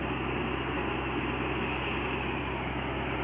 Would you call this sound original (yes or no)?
yes